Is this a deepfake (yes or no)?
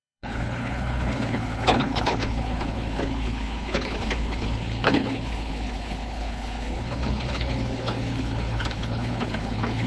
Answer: yes